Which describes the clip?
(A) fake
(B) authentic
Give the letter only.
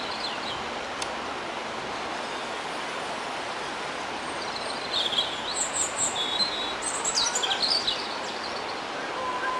B